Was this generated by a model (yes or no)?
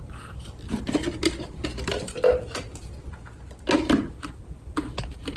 yes